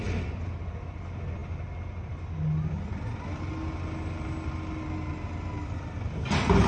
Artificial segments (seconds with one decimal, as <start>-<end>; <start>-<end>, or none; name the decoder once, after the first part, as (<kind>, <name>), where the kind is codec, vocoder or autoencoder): none